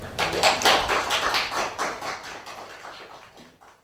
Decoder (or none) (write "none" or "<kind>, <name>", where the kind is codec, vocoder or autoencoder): none